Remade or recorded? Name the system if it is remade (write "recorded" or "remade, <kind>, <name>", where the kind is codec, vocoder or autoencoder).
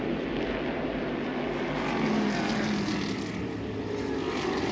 recorded